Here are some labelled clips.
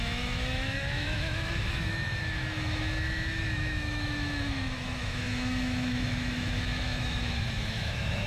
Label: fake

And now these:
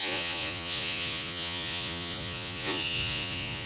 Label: fake